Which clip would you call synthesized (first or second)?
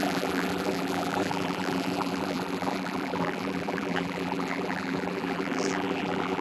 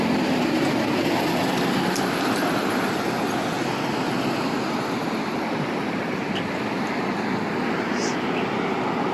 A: first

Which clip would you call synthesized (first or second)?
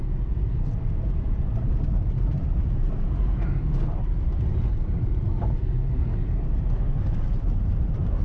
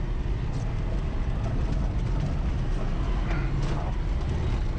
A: first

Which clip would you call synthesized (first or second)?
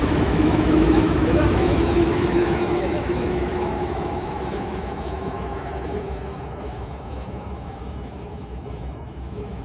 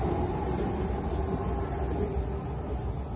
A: first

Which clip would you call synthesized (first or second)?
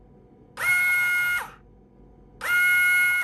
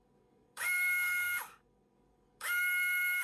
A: second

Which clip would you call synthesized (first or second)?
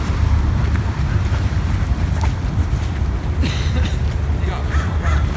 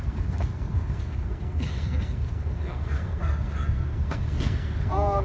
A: second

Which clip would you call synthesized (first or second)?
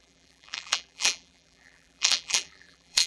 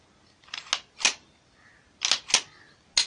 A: first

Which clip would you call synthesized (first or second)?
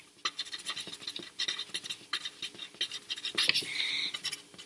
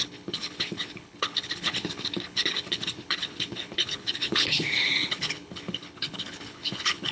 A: second